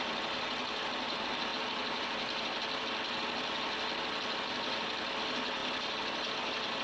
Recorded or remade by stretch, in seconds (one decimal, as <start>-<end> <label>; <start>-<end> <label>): 0.0-6.8 recorded